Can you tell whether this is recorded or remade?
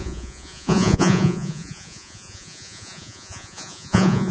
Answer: remade